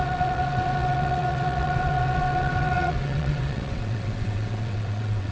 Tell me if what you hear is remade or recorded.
remade